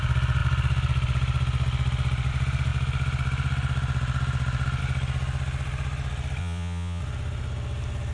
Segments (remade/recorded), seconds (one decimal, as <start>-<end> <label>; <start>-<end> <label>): 0.0-6.4 recorded; 6.4-7.0 remade; 7.0-8.1 recorded